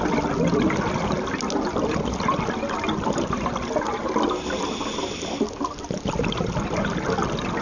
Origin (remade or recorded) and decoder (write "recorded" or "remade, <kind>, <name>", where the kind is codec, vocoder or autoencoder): recorded